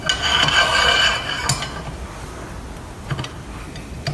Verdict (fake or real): real